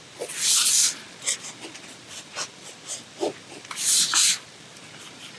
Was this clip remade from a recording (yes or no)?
no